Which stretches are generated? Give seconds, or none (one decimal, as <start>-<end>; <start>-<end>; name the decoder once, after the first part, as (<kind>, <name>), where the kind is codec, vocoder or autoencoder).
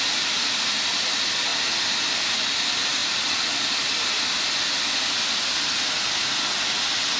none